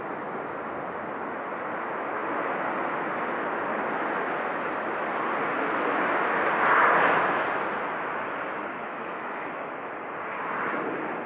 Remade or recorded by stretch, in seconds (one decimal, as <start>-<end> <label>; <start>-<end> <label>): 0.0-8.8 recorded; 8.8-9.9 remade; 9.9-11.3 recorded